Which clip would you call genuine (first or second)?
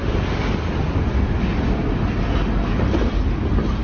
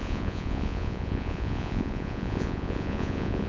first